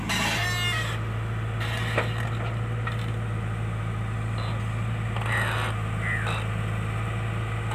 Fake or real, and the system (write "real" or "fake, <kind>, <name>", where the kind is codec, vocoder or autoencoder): real